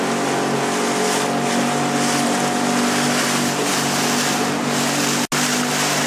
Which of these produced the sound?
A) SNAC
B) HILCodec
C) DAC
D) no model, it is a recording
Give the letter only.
D